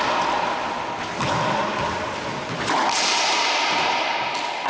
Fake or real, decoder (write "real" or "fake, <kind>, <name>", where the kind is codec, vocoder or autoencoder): real